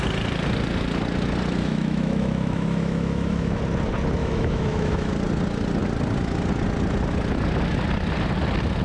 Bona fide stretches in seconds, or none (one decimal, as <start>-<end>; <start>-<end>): 0.0-1.6; 3.6-4.2; 5.1-8.8